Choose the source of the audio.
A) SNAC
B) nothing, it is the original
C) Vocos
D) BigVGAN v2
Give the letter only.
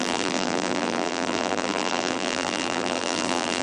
D